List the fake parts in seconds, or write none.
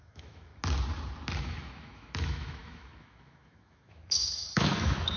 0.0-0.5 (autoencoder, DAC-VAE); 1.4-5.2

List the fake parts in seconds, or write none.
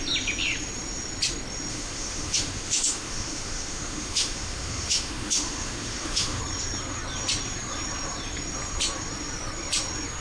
1.7-6.4 (autoencoder, DAC-VAE)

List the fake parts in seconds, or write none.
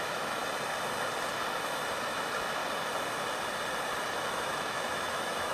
0.0-0.4 (autoencoder, DAC-VAE); 1.9-2.6; 4.3-5.5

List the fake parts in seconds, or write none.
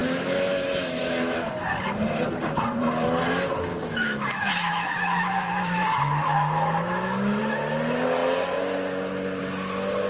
0.0-1.5 (autoencoder, DAC-VAE); 3.7-7.4